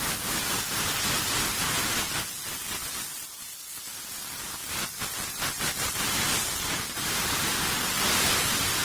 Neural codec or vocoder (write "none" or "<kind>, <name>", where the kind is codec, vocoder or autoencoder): none